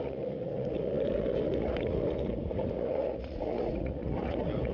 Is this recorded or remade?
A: remade